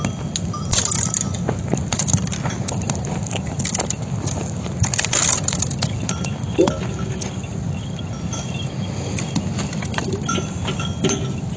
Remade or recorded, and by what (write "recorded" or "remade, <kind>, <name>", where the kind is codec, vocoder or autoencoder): recorded